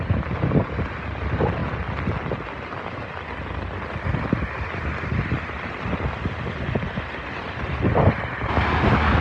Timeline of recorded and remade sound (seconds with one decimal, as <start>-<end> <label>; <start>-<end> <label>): 0.0-9.2 recorded